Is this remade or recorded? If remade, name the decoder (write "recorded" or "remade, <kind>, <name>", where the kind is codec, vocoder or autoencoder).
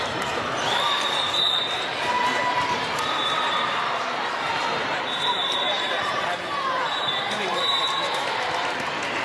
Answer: remade, vocoder, BigVGAN v2